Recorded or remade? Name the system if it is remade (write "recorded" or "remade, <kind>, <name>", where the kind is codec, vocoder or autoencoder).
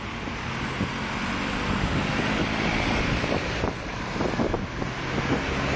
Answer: recorded